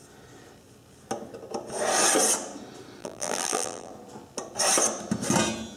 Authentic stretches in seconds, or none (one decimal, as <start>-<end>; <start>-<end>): 0.0-3.0; 3.9-5.8